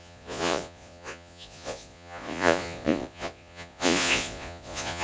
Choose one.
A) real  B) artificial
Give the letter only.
B